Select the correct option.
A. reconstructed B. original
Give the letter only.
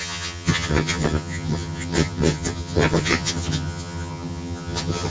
A